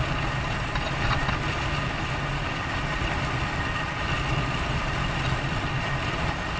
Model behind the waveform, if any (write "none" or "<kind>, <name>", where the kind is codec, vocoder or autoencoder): none